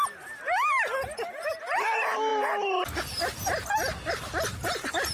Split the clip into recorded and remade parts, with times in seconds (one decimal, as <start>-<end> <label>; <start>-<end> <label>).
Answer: 0.0-5.1 recorded